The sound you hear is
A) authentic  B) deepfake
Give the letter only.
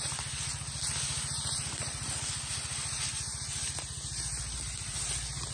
A